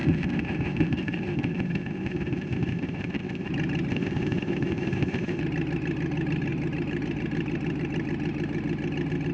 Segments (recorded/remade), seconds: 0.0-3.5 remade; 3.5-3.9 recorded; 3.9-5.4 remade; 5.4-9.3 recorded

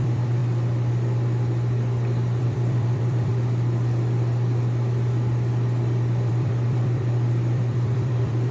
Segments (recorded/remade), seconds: 0.0-0.4 remade; 0.4-2.4 recorded; 2.4-3.3 remade; 3.3-6.3 recorded; 6.3-8.5 remade

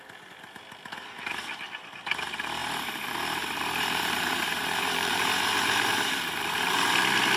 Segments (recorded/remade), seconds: 0.0-2.6 recorded; 2.6-7.0 remade; 7.0-7.4 recorded

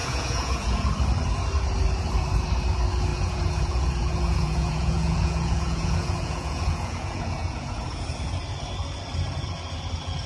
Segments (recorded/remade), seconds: 0.0-0.9 remade; 0.9-3.1 recorded; 3.1-8.2 remade; 8.2-10.3 recorded

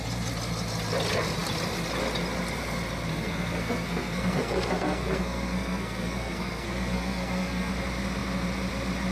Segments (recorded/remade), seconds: 0.0-3.1 recorded; 3.1-7.7 remade; 7.7-9.1 recorded

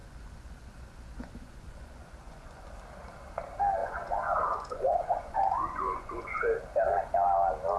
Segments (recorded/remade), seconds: 0.0-2.7 remade; 2.7-3.8 recorded; 3.8-6.4 remade; 6.4-7.8 recorded